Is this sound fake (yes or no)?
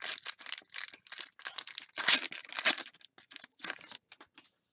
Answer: no